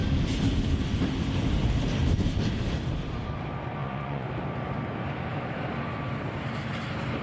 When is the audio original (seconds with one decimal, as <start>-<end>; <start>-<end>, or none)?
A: 0.0-3.8; 4.3-7.2